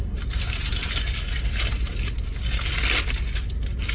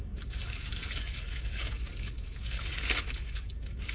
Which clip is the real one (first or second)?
first